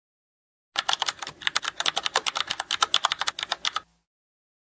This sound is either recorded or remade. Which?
recorded